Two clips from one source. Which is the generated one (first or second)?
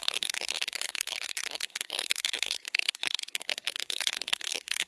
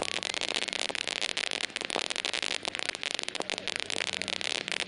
first